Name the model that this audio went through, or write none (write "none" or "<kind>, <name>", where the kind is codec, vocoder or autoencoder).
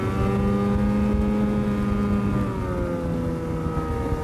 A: none